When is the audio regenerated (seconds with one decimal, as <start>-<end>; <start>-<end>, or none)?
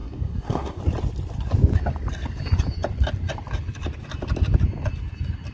0.0-0.8